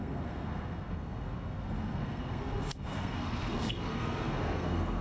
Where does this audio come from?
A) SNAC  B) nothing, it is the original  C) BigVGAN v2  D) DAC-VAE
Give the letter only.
A